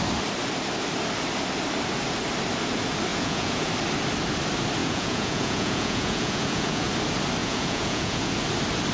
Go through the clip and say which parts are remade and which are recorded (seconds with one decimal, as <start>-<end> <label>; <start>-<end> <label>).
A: 0.0-3.1 recorded; 3.1-3.7 remade; 3.7-4.8 recorded; 4.8-6.9 remade; 6.9-7.4 recorded; 7.4-8.3 remade; 8.3-8.9 recorded